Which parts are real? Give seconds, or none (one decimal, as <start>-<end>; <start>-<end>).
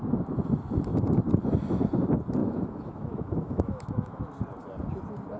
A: 0.0-2.4; 4.2-5.4